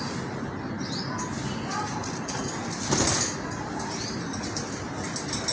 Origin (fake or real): real